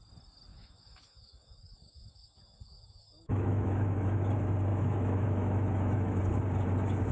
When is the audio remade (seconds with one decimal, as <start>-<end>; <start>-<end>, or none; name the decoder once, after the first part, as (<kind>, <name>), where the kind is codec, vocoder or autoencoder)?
0.5-4.3 (autoencoder, DAC-VAE); 4.7-6.2

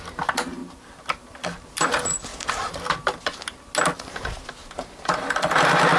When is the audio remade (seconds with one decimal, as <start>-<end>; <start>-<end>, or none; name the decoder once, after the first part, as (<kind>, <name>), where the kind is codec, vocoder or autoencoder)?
none